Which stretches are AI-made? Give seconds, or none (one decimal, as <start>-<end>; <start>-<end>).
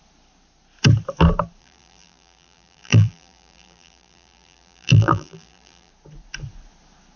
1.6-5.9